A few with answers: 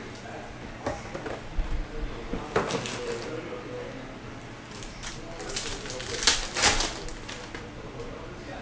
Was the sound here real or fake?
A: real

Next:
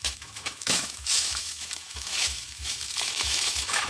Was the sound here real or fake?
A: fake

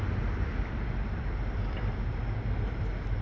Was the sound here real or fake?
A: fake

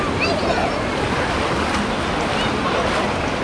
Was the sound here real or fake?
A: real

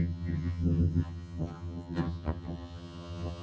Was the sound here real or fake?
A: fake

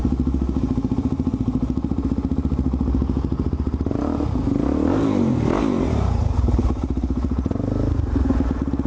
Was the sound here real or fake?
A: real